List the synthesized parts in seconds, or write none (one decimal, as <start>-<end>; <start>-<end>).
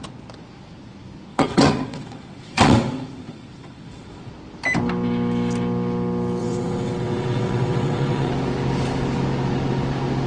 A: 1.3-4.3; 6.4-8.3